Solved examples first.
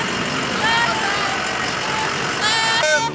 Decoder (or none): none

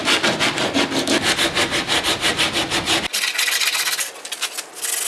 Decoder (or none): none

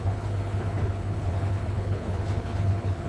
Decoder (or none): codec, HILCodec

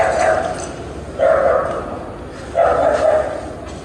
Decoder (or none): none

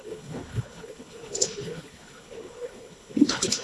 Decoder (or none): codec, HILCodec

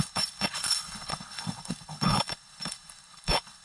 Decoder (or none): codec, HILCodec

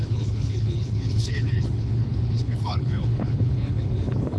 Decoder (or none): codec, HILCodec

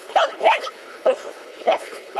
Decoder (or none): codec, HILCodec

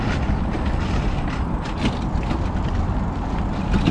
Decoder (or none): none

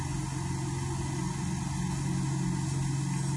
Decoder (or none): none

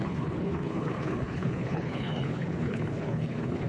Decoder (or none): codec, HILCodec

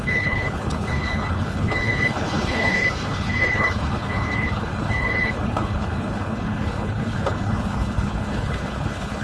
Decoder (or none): codec, HILCodec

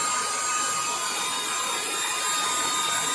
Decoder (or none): none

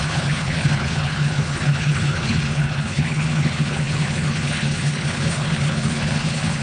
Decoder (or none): codec, HILCodec